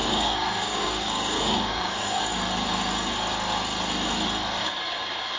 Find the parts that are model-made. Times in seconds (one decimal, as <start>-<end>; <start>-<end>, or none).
0.0-2.2; 4.6-5.4